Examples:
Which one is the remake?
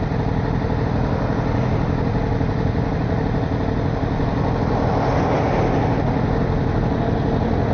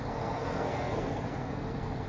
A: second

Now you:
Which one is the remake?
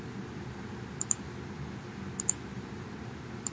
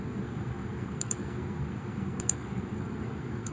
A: second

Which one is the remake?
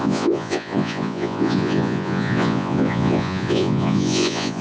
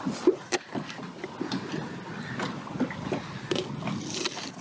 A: first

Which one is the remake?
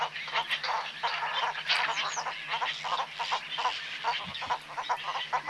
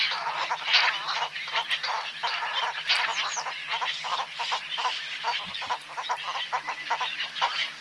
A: second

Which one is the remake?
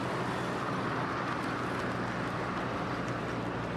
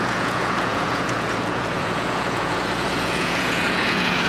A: second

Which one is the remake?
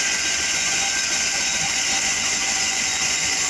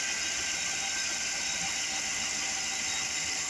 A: first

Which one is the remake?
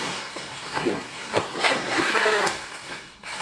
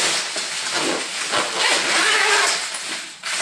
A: first